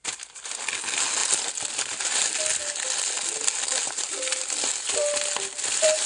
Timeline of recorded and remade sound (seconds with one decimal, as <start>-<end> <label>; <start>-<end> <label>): 0.0-6.1 recorded